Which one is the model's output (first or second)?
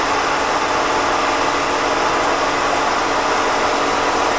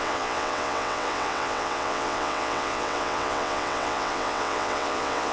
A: second